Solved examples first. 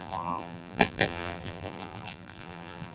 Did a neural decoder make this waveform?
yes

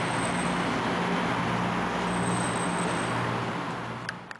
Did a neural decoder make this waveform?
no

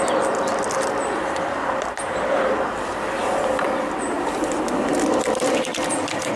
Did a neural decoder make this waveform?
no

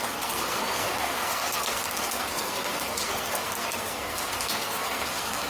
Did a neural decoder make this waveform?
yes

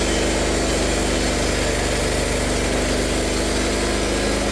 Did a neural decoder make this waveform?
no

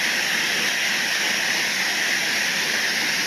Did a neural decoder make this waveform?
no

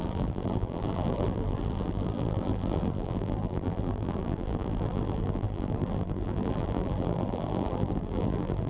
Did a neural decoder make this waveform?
yes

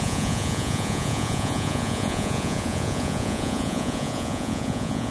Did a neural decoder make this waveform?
yes